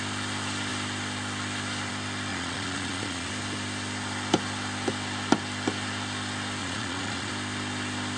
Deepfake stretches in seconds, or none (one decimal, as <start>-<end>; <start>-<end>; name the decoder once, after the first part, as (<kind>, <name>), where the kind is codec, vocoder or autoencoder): 2.3-3.3 (vocoder, Vocos); 6.6-7.3